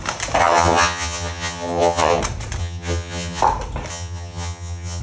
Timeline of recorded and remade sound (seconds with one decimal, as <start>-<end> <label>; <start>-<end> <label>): 0.0-0.4 recorded; 0.4-2.2 remade; 2.2-2.6 recorded; 2.6-3.4 remade; 3.4-3.9 recorded; 3.9-5.0 remade